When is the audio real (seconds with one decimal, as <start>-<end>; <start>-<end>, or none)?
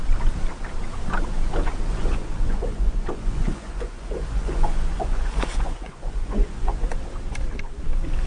0.0-1.9; 6.9-8.3